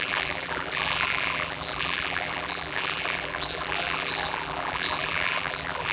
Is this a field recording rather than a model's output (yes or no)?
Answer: no